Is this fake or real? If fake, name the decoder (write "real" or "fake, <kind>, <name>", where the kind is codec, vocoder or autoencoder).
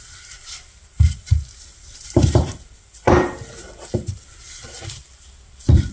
fake, vocoder, BigVGAN v2